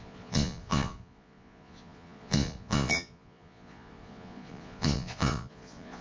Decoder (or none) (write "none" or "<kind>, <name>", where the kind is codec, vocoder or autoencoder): vocoder, Vocos